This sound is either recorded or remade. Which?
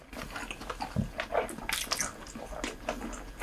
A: recorded